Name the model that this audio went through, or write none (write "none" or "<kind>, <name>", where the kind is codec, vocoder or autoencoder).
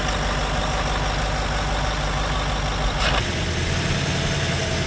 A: none